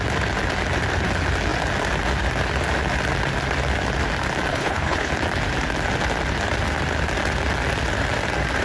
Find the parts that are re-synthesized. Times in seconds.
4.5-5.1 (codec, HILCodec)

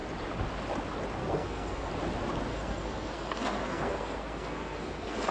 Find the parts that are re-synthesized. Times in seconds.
1.2-1.9 (codec, SNAC); 2.5-5.3